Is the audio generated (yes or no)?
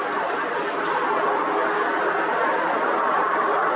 no